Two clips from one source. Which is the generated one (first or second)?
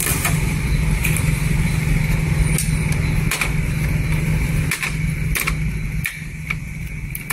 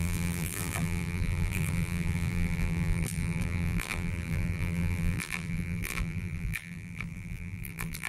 second